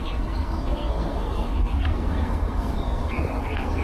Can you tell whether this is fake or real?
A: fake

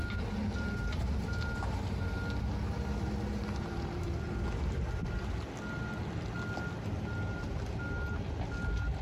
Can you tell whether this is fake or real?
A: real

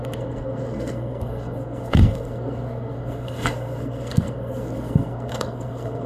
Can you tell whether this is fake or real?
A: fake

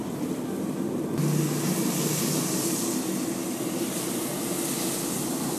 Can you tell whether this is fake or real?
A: real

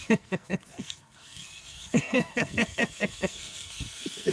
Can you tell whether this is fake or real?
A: fake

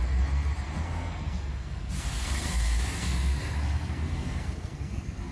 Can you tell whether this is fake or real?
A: fake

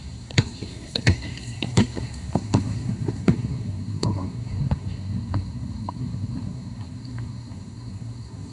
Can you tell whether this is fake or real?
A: fake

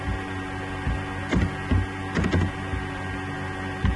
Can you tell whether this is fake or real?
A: real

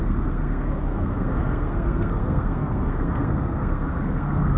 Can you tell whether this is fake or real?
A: fake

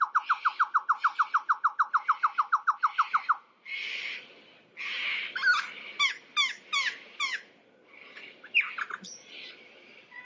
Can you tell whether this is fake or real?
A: real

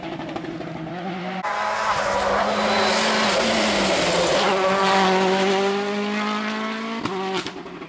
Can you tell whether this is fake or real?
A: real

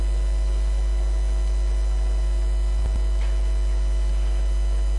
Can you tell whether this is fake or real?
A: real